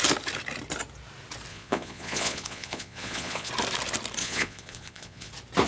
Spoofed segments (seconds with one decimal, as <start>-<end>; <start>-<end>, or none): 1.5-3.5; 4.2-5.3